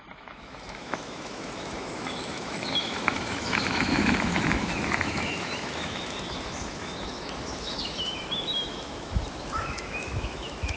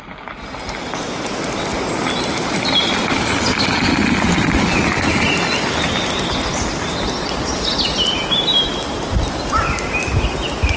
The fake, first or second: first